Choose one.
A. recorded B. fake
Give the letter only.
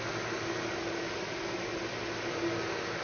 A